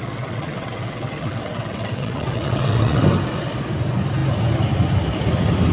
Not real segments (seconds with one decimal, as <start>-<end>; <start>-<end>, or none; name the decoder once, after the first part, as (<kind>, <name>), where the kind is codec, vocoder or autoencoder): 0.0-3.0 (vocoder, WaveNeXt)